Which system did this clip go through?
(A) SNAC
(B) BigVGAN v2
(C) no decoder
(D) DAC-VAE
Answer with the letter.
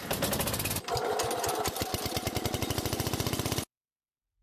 C